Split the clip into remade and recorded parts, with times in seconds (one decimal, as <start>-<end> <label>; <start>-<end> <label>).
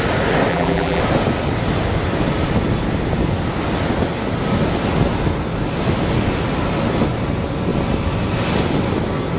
0.0-0.5 recorded; 0.5-1.0 remade; 1.0-9.4 recorded